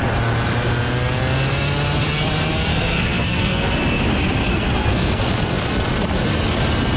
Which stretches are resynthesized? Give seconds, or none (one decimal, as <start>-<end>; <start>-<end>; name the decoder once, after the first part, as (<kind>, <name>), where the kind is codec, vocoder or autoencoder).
2.7-3.7 (codec, SNAC); 4.5-5.3